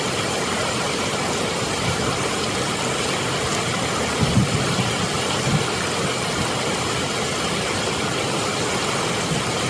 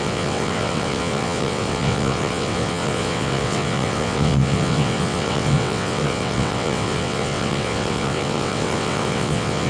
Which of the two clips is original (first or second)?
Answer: first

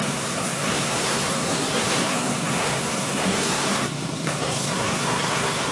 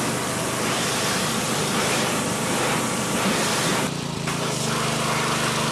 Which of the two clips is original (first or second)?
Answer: second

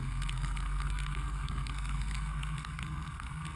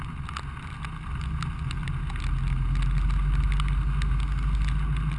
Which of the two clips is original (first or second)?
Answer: second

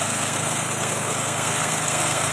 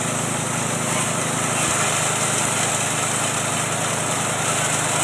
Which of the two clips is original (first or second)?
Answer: second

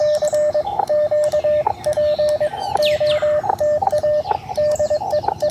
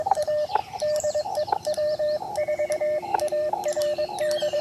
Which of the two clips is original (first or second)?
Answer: first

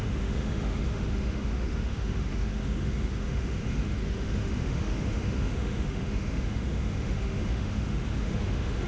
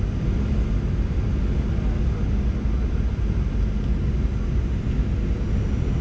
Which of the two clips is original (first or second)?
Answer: second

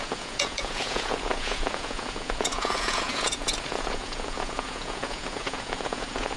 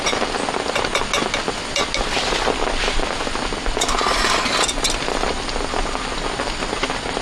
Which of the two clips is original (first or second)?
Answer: second